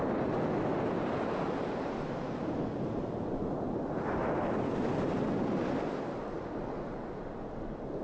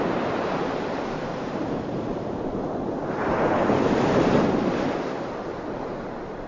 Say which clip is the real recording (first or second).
first